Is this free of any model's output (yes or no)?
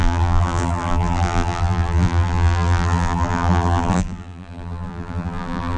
no